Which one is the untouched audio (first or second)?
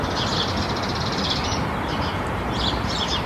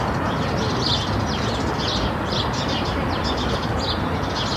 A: second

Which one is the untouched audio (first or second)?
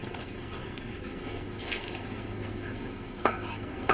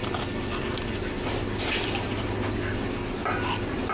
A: second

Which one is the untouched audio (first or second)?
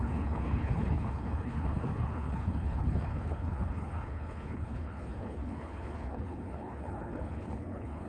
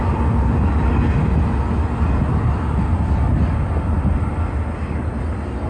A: second